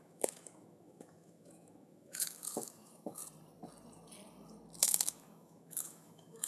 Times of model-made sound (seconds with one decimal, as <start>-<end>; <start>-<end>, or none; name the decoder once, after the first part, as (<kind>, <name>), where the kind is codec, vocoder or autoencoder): 0.0-3.2 (autoencoder, DAC-VAE); 4.8-6.5